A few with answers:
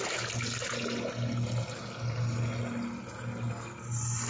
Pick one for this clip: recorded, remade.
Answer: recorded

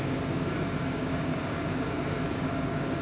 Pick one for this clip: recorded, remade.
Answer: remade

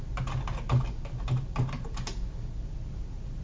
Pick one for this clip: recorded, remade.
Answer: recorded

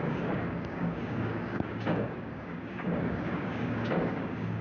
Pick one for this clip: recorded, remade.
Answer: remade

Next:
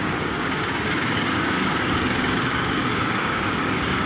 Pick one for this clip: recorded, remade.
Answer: remade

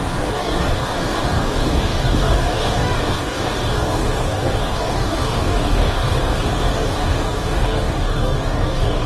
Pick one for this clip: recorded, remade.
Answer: remade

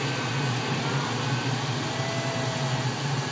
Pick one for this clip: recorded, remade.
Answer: recorded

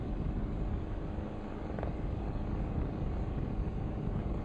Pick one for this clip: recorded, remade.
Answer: remade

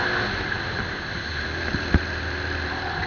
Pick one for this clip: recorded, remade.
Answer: recorded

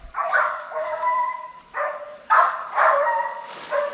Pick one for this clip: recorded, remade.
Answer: remade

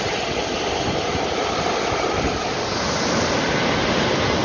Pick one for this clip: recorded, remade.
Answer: recorded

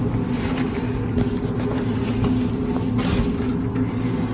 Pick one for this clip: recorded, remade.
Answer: recorded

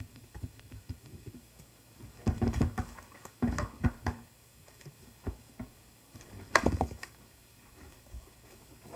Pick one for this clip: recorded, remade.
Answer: remade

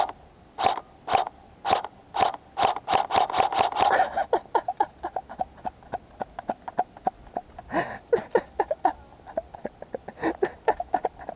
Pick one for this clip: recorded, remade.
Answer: recorded